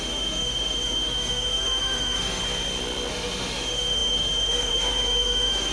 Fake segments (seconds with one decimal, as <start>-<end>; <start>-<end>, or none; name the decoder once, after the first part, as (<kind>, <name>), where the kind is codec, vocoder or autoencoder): 0.0-2.4 (autoencoder, DAC-VAE); 3.1-5.7